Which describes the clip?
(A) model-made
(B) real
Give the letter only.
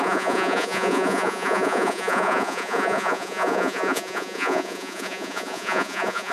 A